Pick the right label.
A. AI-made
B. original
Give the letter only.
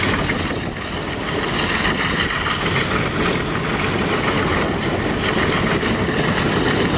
B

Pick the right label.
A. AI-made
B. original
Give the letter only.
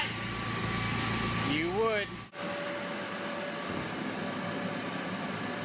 B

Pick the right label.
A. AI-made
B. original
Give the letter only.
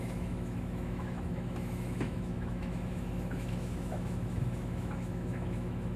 A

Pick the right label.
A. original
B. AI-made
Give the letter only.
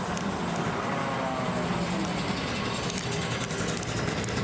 A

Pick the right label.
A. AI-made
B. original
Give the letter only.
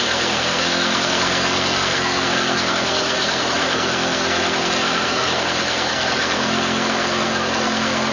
A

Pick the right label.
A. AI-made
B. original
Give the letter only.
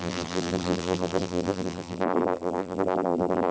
A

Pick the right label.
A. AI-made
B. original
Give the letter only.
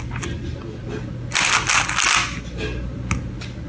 B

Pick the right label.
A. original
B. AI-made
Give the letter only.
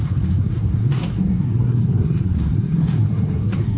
B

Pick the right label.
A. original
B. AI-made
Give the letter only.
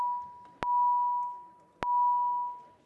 A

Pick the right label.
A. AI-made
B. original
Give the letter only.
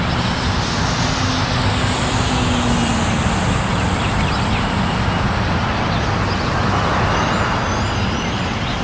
B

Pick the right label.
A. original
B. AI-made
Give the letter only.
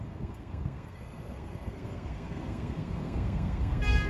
B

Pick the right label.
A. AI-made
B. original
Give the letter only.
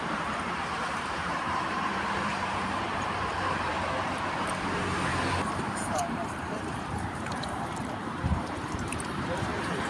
A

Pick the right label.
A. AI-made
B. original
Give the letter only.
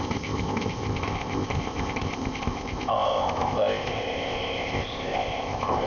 A